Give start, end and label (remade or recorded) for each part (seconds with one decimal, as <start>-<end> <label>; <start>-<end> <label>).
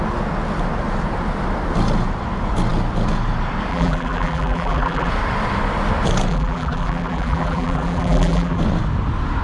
0.0-3.7 recorded; 3.7-5.1 remade; 5.1-6.3 recorded; 6.3-8.6 remade; 8.6-9.4 recorded